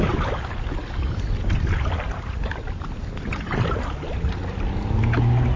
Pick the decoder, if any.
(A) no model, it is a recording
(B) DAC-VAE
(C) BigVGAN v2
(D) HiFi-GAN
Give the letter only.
A